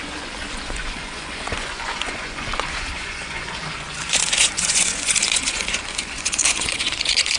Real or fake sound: fake